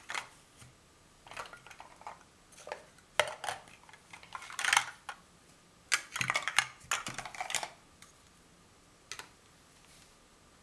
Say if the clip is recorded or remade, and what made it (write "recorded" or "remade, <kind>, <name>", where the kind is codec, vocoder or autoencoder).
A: recorded